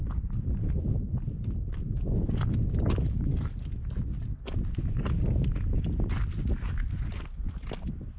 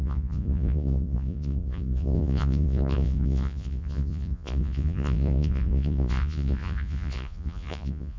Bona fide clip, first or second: first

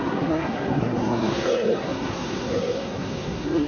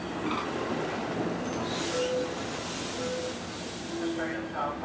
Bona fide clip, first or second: second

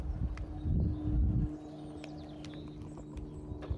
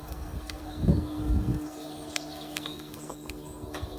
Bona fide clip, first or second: first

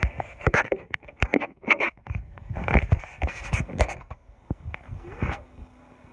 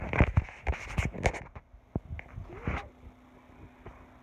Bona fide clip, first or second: second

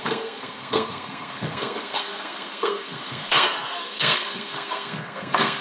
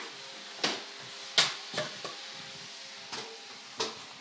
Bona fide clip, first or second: second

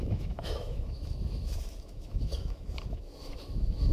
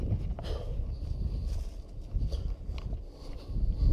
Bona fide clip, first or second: second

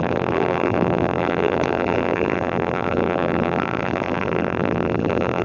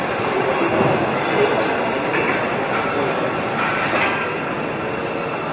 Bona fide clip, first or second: second